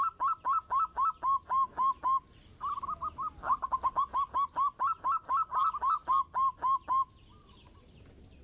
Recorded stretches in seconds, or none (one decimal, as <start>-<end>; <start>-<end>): 0.0-8.4